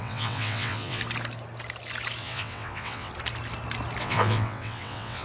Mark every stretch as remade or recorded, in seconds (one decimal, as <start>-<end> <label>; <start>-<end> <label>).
0.0-1.0 remade; 1.0-2.2 recorded; 2.2-3.1 remade; 3.1-4.0 recorded; 4.0-5.2 remade